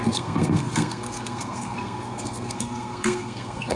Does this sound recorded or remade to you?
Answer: remade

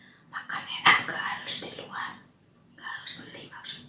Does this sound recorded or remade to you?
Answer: recorded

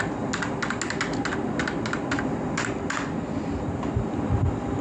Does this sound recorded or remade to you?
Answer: recorded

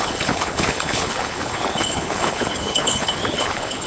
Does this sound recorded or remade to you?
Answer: remade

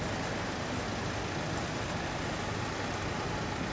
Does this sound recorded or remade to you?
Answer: recorded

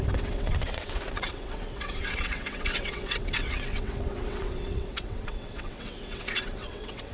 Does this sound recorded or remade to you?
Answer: remade